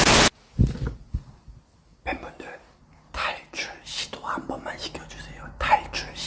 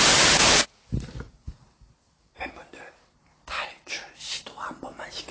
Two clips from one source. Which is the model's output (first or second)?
second